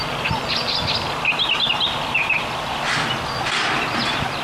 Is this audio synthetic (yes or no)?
no